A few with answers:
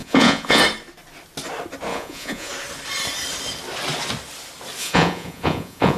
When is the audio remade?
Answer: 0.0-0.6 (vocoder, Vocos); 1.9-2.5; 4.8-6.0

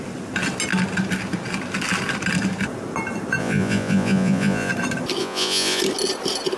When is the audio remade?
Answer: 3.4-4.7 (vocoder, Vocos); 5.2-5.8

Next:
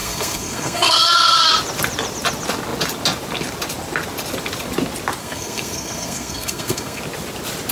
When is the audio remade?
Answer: 0.0-1.4 (codec, SNAC); 5.2-7.0